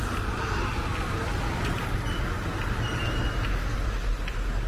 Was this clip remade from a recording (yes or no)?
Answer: no